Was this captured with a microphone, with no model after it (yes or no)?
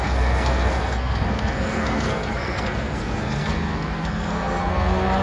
no